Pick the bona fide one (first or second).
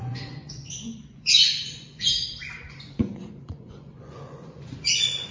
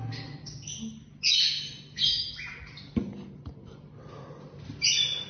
second